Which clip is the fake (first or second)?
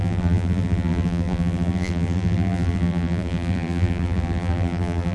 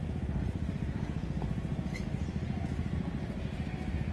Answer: first